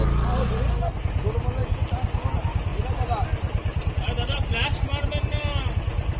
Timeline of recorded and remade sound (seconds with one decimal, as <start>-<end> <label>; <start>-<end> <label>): 0.0-6.2 recorded